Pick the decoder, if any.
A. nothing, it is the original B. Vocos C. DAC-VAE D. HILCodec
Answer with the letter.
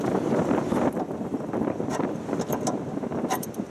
A